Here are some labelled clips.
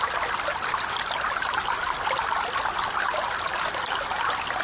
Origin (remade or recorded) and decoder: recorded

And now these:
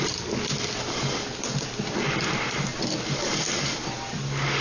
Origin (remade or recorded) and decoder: recorded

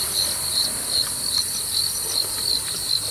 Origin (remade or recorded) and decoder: recorded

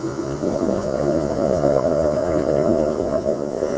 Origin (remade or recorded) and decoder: remade, vocoder, Vocos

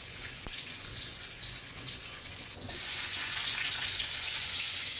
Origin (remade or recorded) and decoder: remade, vocoder, Vocos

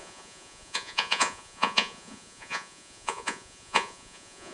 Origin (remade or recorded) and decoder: remade, vocoder, Vocos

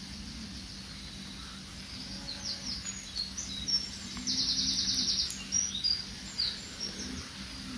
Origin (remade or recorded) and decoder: recorded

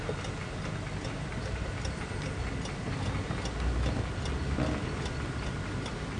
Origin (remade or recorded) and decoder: recorded